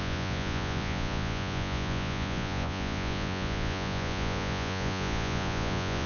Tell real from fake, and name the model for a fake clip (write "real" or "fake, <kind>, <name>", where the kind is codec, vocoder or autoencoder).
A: fake, vocoder, Vocos